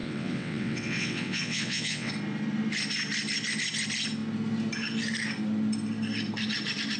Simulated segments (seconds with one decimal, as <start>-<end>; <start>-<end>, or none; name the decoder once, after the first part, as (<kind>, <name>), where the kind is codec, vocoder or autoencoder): 0.0-2.1 (vocoder, WaveNeXt)